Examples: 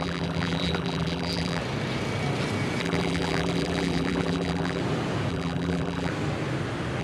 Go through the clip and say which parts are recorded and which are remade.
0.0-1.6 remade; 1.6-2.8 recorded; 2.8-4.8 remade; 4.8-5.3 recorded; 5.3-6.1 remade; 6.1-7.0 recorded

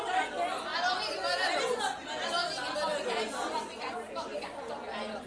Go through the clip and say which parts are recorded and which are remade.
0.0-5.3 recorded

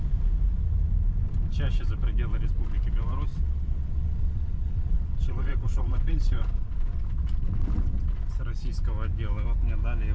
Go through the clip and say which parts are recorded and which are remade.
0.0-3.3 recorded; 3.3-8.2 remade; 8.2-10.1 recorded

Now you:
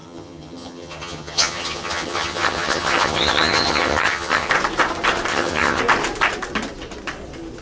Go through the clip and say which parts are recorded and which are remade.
0.0-4.5 remade; 4.5-5.3 recorded; 5.3-5.8 remade; 5.8-7.6 recorded

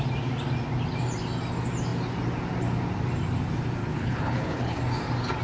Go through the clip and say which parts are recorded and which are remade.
0.0-3.8 recorded; 3.8-4.8 remade; 4.8-5.4 recorded

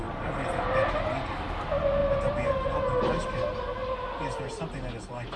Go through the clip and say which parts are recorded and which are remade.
0.0-5.4 recorded